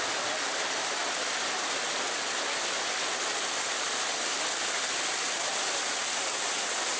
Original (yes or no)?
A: yes